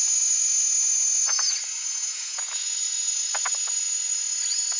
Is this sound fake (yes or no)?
yes